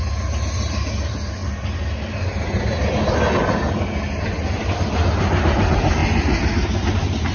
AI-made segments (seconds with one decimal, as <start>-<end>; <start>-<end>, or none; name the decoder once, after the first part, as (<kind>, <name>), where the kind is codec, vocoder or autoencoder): none